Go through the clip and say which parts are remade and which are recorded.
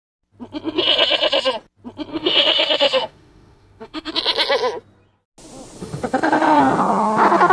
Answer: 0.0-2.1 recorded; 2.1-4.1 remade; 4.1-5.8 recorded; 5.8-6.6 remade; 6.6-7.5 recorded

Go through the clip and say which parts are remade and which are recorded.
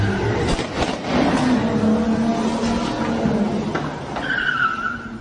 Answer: 0.0-5.2 recorded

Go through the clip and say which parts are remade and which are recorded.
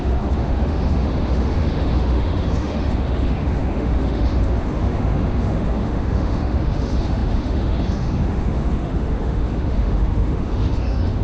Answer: 0.0-11.2 remade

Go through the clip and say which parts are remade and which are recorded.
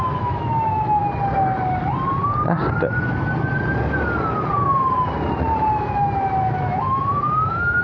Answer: 0.0-1.0 remade; 1.0-5.7 recorded; 5.7-7.8 remade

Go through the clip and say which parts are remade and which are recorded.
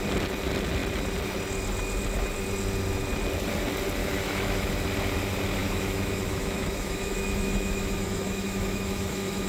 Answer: 0.0-4.0 recorded; 4.0-4.7 remade; 4.7-5.6 recorded; 5.6-9.5 remade